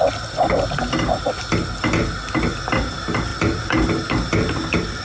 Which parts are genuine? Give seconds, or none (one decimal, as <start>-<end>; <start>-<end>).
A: 0.0-5.0